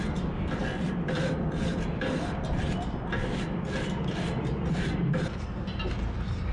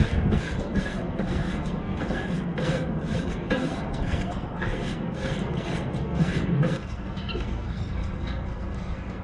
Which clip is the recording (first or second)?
first